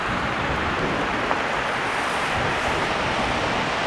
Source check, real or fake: real